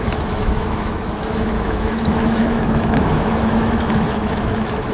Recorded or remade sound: remade